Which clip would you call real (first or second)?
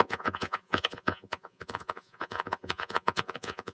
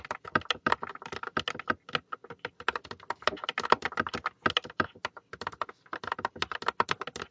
second